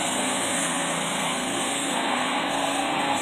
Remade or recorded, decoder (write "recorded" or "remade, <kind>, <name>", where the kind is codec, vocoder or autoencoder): remade, codec, SNAC